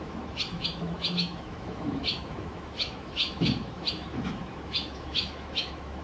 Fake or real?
fake